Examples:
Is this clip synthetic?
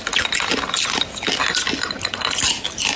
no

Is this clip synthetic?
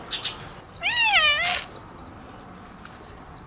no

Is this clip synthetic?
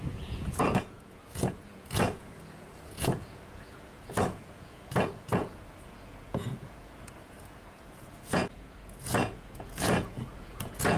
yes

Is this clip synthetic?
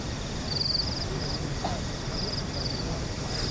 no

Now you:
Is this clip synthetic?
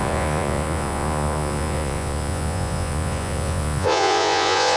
yes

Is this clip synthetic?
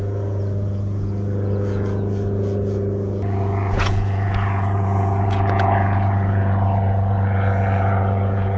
yes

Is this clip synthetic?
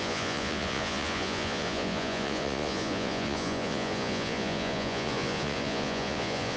yes